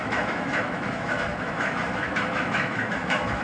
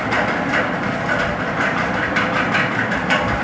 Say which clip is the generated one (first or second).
first